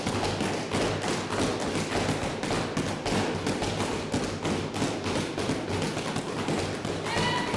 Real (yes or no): yes